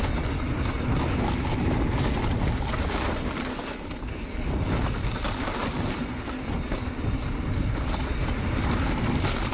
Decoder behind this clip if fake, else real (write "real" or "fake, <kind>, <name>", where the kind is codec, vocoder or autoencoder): real